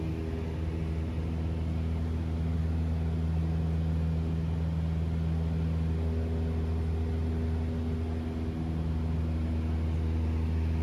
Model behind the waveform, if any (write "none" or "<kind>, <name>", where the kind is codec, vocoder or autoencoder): none